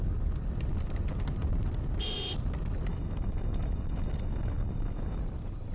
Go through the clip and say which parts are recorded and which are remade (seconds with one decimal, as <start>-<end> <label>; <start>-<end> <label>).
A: 0.0-2.9 recorded; 2.9-5.2 remade; 5.2-5.7 recorded

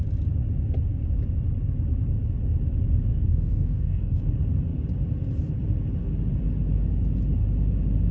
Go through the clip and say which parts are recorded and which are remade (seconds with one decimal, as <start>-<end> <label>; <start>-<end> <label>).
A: 0.0-3.1 recorded; 3.1-4.2 remade; 4.2-8.1 recorded

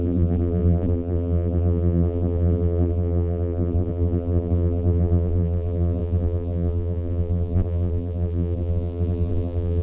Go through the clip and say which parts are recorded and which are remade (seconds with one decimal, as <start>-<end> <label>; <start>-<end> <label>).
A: 0.0-9.8 remade

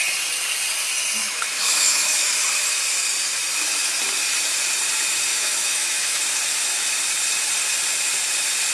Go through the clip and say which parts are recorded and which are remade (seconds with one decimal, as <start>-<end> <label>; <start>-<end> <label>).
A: 0.0-1.2 recorded; 1.2-2.3 remade; 2.3-5.3 recorded; 5.3-6.2 remade; 6.2-8.7 recorded

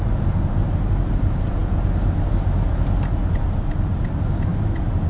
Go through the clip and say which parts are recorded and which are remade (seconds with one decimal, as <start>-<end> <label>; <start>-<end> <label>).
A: 0.0-5.1 recorded

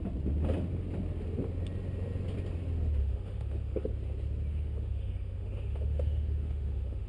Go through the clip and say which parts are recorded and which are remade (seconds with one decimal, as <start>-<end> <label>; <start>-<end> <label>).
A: 0.0-3.0 recorded; 3.0-3.9 remade; 3.9-4.5 recorded; 4.5-7.1 remade